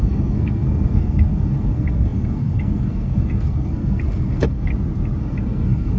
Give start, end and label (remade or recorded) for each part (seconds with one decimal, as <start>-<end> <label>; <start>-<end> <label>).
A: 0.0-4.7 remade; 4.7-5.2 recorded; 5.2-6.0 remade